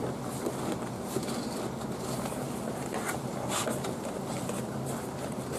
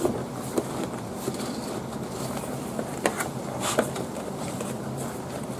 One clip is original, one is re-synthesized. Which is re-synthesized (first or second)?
second